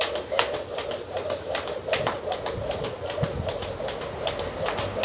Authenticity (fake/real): real